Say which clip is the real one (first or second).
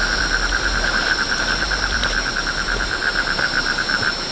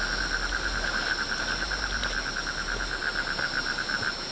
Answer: second